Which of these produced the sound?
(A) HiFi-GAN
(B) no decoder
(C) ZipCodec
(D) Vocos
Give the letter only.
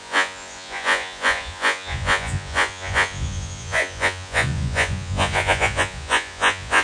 D